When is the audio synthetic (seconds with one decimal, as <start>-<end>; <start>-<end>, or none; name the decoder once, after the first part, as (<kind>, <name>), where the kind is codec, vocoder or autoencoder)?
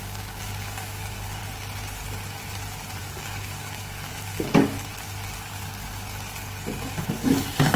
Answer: 0.0-1.4 (codec, DAC); 3.0-4.9; 6.8-7.8